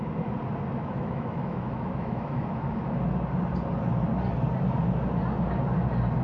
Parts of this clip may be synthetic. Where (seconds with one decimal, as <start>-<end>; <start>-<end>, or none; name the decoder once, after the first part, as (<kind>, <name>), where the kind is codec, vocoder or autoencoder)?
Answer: 0.7-2.8 (autoencoder, DAC-VAE)